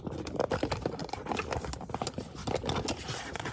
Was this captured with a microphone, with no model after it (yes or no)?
yes